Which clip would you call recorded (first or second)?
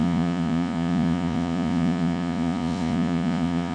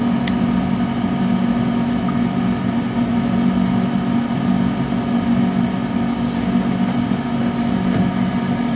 second